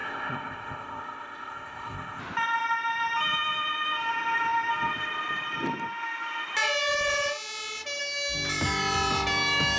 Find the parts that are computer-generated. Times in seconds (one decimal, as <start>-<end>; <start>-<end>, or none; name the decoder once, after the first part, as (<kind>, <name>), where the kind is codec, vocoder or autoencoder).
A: 0.0-2.2 (codec, ZipCodec)

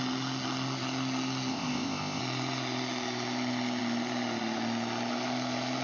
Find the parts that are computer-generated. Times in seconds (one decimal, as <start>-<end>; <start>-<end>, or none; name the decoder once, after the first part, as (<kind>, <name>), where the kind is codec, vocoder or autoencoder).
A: 1.5-2.2 (codec, ZipCodec)

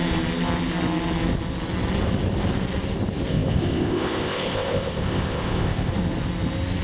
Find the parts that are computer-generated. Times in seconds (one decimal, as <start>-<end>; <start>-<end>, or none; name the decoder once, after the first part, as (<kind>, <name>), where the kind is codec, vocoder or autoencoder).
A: 3.3-5.9 (codec, ZipCodec)

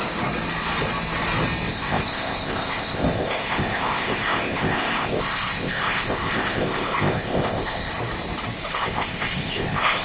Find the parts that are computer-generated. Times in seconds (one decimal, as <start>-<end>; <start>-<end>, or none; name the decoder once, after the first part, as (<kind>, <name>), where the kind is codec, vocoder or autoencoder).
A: 1.7-7.9 (codec, ZipCodec); 8.7-10.0